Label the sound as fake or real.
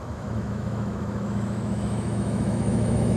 fake